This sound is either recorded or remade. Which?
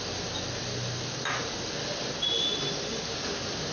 recorded